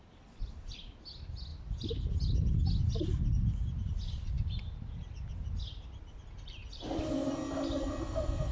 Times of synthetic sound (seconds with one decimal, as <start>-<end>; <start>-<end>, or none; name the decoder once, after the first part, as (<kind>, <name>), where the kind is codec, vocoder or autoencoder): 1.5-2.1 (vocoder, BigVGAN v2)